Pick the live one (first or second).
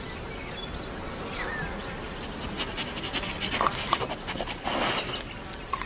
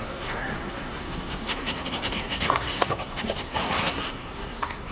first